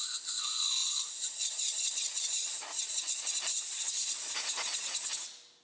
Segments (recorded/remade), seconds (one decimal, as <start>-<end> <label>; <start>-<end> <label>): 0.0-0.8 recorded; 0.8-4.2 remade; 4.2-5.6 recorded